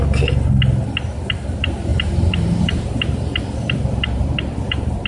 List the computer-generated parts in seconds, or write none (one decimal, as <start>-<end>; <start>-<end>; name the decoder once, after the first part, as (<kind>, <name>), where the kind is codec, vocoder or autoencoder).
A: 1.9-5.1 (vocoder, BigVGAN v2)